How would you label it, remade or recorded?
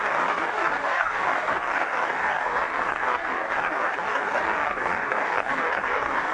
remade